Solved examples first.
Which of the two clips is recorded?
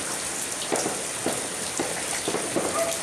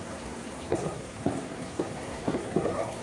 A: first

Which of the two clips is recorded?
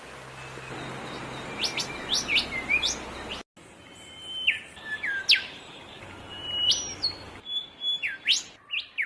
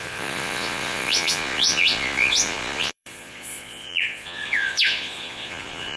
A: first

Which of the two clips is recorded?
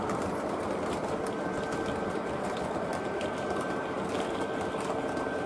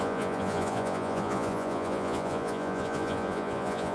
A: first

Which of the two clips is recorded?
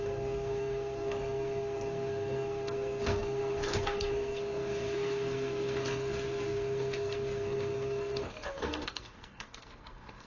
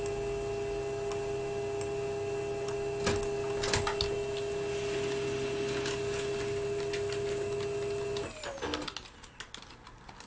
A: second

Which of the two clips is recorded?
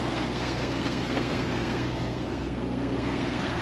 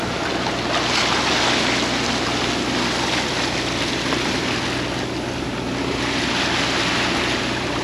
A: second